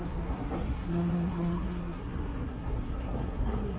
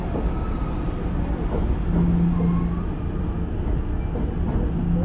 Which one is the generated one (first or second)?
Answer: first